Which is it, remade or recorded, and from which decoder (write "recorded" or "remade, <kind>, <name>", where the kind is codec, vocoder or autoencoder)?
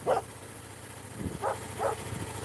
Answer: recorded